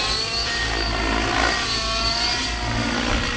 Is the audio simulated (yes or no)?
no